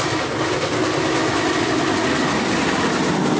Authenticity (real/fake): real